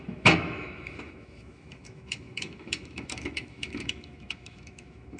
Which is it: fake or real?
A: fake